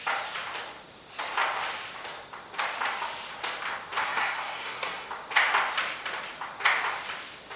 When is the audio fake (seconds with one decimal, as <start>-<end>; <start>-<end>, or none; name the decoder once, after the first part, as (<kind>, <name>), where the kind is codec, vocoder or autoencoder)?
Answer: 4.0-5.1 (codec, SNAC)